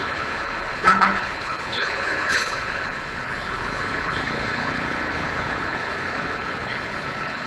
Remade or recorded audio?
remade